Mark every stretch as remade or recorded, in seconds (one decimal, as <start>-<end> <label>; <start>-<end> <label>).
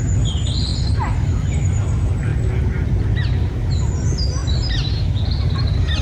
0.0-6.0 recorded